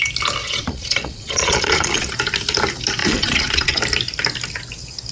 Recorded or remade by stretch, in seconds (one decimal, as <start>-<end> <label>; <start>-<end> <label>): 0.0-0.4 recorded; 0.4-2.1 remade; 2.1-3.0 recorded; 3.0-3.8 remade; 3.8-5.1 recorded